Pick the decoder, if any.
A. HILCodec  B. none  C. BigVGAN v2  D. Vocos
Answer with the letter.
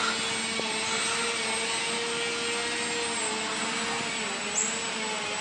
B